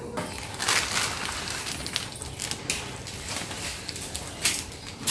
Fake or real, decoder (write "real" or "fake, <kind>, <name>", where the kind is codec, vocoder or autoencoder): real